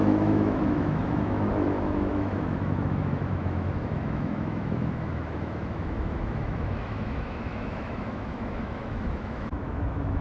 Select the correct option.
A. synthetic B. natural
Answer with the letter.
A